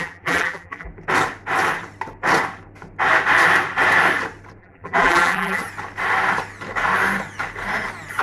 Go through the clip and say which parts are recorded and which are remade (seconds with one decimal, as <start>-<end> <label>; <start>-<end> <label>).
0.0-0.9 remade; 0.9-4.6 recorded; 4.6-5.6 remade; 5.6-8.2 recorded